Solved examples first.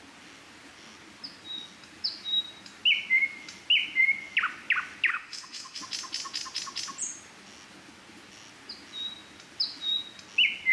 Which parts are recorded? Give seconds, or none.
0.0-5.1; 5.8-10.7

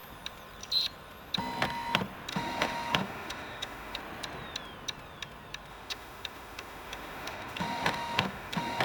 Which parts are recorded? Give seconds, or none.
0.0-2.3; 4.0-5.7

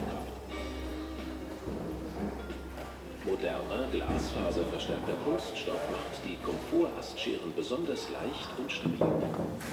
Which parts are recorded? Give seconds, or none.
0.0-3.4; 6.5-9.7

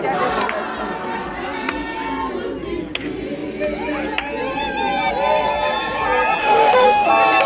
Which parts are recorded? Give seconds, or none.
0.0-6.4; 7.1-7.5